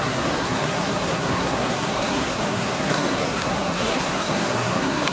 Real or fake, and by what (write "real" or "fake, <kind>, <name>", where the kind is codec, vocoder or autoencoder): fake, codec, SNAC